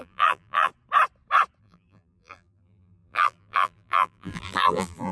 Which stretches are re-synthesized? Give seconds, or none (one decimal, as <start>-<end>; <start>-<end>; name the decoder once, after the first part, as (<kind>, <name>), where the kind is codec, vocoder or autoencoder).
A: 0.0-0.7 (vocoder, BigVGAN v2); 1.6-5.1